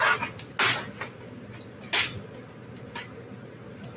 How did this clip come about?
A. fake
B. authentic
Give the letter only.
B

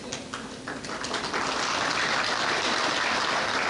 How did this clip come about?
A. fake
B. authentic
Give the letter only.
B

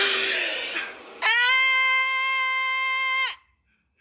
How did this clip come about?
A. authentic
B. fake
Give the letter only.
A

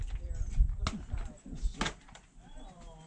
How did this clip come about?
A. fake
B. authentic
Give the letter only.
B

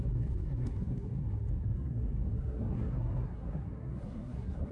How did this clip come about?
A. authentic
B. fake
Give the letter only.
B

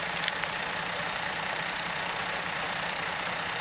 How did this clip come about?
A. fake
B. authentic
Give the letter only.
A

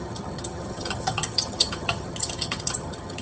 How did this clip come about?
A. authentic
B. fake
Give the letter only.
B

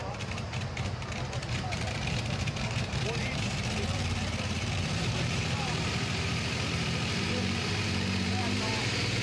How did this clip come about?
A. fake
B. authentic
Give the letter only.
A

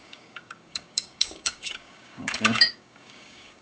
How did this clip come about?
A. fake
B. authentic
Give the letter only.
A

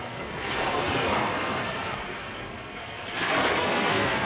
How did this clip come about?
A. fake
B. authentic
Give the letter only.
A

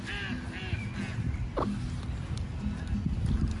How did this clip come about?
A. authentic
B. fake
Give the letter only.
A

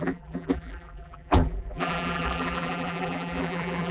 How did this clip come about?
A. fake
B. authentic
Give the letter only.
A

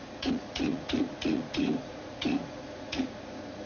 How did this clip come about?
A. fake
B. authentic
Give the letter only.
A